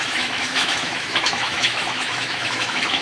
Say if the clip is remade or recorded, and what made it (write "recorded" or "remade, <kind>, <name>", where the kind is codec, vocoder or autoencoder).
remade, autoencoder, DAC-VAE